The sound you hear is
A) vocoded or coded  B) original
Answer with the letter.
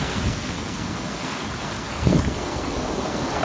A